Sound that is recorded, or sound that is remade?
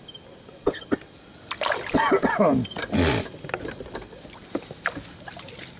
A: recorded